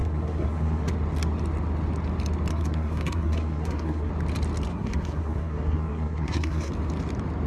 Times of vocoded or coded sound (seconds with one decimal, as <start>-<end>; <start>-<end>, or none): 0.0-0.9; 2.5-4.1; 4.7-6.7